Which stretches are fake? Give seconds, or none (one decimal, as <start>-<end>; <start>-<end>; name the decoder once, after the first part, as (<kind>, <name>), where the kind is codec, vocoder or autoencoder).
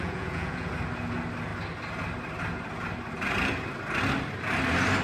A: 0.0-0.7 (vocoder, Vocos)